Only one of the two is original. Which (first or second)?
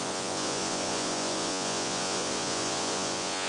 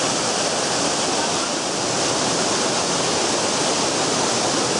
second